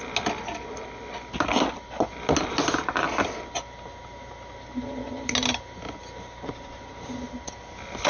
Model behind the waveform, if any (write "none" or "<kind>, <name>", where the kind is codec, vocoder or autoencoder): none